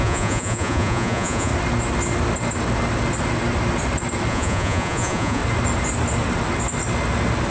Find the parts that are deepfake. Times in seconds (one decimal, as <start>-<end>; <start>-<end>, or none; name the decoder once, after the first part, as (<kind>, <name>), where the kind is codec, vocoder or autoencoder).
0.0-1.5 (vocoder, Vocos); 4.3-5.4